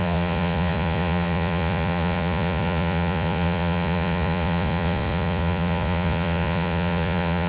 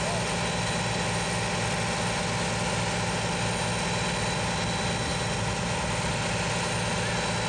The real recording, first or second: second